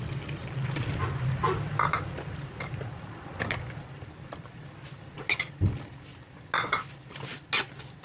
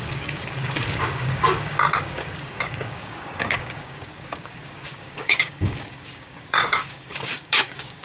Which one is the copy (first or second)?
second